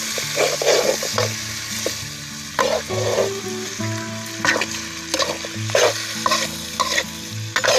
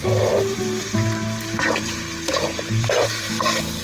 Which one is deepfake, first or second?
second